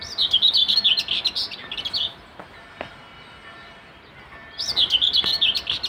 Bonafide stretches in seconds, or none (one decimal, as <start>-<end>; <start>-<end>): 0.0-5.9